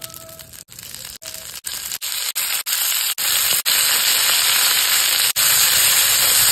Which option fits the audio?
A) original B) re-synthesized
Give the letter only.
A